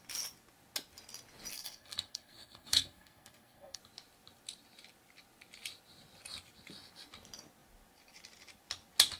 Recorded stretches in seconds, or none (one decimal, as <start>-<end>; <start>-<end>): 0.0-1.5; 3.8-9.2